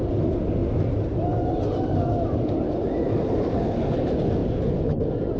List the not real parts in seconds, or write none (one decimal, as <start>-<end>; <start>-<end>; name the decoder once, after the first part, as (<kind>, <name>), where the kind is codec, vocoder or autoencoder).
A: none